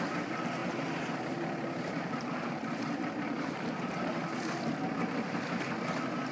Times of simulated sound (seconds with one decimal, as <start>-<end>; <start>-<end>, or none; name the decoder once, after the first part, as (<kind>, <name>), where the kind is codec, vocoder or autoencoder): 0.6-4.4 (vocoder, BigVGAN v2)